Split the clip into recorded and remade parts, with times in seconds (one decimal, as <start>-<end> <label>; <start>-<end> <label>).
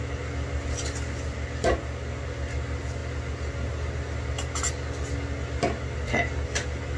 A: 0.0-7.0 recorded